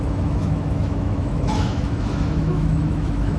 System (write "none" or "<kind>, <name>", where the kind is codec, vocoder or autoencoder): autoencoder, DAC-VAE